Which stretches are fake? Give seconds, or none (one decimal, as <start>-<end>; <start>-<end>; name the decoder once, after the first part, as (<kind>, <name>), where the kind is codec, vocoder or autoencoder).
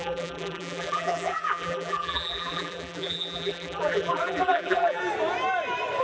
0.0-5.0 (vocoder, BigVGAN v2)